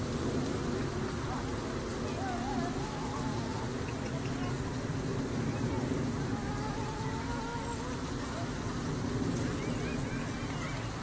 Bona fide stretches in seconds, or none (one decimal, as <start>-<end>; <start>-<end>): 0.0-5.1; 6.0-7.5; 8.3-11.0